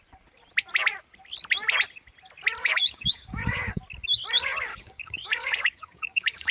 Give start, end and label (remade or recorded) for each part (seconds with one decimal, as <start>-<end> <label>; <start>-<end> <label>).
0.0-2.6 recorded; 2.6-3.8 remade; 3.8-4.7 recorded; 4.7-6.5 remade

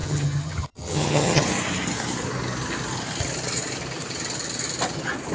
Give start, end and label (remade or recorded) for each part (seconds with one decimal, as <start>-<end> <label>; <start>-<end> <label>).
0.0-1.4 remade; 1.4-5.3 recorded

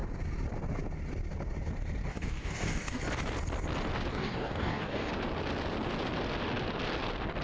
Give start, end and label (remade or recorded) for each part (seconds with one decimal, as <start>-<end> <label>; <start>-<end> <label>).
0.0-2.1 recorded; 2.1-3.0 remade; 3.0-4.1 recorded; 4.1-5.1 remade; 5.1-7.4 recorded